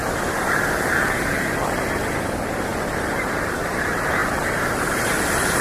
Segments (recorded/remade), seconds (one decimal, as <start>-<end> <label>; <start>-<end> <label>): 0.0-1.5 remade; 1.5-2.7 recorded; 2.7-3.6 remade; 3.6-4.2 recorded; 4.2-5.0 remade; 5.0-5.6 recorded